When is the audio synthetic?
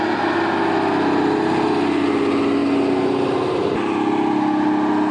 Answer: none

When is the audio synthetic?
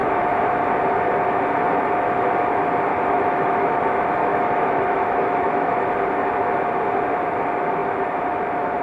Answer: 2.9-3.7 (autoencoder, DAC-VAE); 4.3-5.9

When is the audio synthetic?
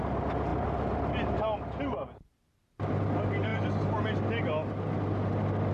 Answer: none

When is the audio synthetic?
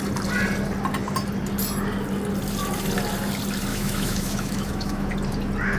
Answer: 3.7-5.1 (autoencoder, DAC-VAE)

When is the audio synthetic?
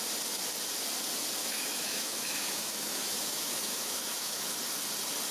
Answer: 1.4-4.6 (autoencoder, DAC-VAE)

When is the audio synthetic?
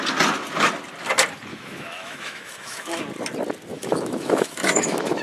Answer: 1.5-3.0 (autoencoder, DAC-VAE); 3.7-5.2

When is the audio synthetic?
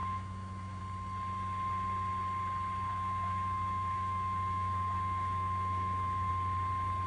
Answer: 0.0-0.8 (autoencoder, DAC-VAE); 2.9-6.3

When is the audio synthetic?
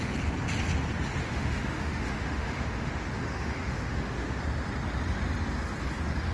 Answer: 1.2-4.4 (autoencoder, DAC-VAE)